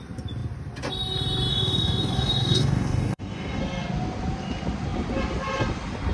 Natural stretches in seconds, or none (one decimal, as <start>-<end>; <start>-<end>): 0.0-1.5; 3.6-6.1